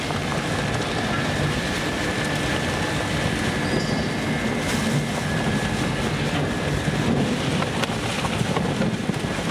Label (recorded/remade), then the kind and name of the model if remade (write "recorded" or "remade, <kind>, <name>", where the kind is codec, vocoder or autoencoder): recorded